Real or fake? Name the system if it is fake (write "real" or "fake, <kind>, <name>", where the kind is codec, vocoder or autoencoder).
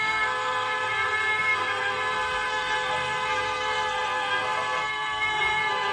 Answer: fake, codec, SNAC